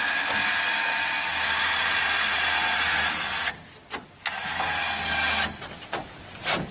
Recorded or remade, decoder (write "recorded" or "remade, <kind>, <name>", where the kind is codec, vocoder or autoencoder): recorded